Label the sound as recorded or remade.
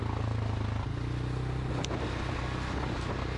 recorded